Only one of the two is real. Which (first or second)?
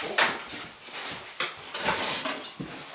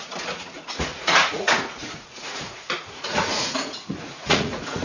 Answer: first